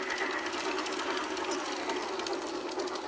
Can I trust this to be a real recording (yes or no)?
yes